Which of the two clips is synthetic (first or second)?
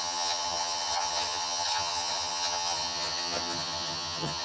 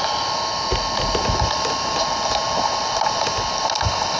first